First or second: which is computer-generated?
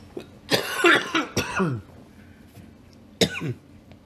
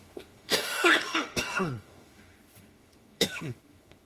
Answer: second